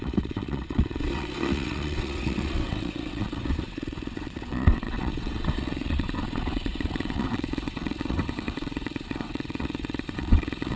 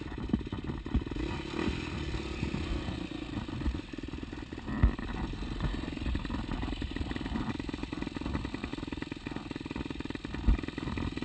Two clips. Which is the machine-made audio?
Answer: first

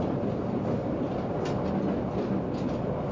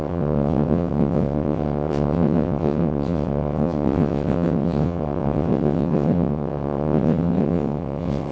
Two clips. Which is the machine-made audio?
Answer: second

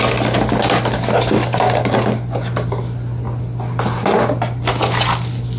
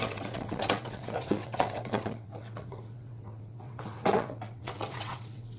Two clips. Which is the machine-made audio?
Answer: second